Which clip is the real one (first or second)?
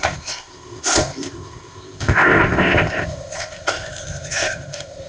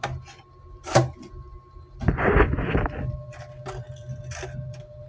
second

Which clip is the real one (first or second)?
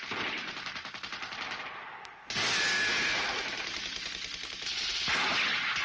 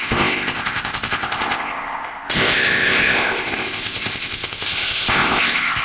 first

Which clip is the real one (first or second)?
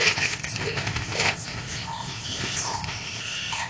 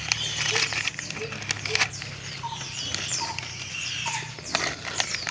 second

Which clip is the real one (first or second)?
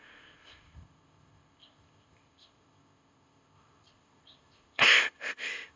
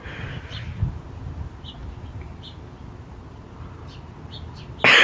second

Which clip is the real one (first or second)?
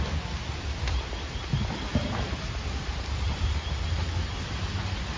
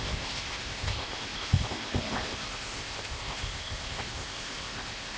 first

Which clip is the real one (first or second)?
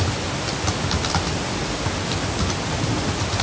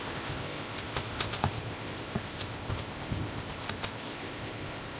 first